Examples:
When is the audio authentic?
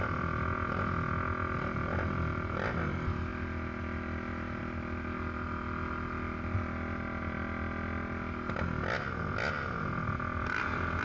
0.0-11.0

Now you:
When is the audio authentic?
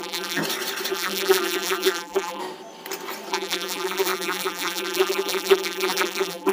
0.4-0.9; 2.4-3.3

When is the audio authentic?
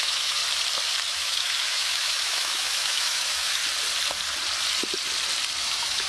0.4-1.1; 3.6-5.6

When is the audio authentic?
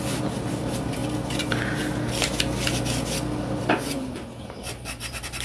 1.0-3.4